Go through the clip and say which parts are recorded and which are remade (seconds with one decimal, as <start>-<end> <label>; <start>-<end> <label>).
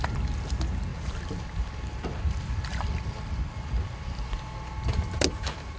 0.0-0.9 recorded; 0.9-4.3 remade; 4.3-5.8 recorded